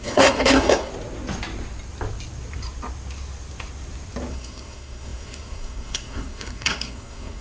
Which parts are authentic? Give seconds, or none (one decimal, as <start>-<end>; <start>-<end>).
0.9-4.3